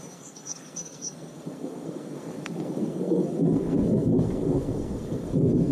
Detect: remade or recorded remade